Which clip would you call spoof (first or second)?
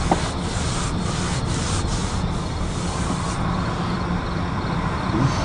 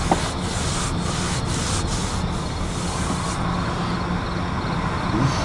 first